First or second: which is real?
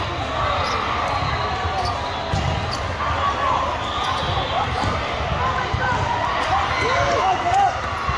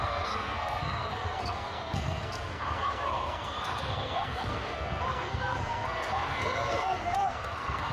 first